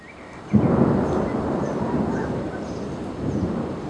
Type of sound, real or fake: real